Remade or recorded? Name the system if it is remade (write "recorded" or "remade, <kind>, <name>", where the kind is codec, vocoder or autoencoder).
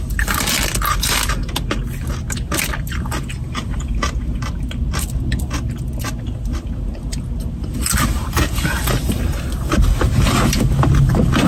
recorded